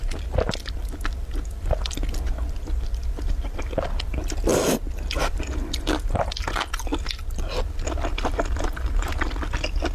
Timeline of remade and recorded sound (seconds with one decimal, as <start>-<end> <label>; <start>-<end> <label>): 0.0-9.9 recorded